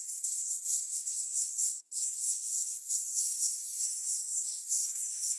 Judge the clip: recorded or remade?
remade